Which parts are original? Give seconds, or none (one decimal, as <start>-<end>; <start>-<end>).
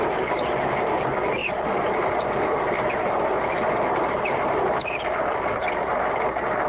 0.0-1.4; 5.4-6.7